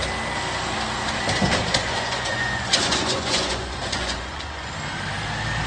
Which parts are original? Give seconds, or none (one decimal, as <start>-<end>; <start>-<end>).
0.0-1.8; 4.7-5.7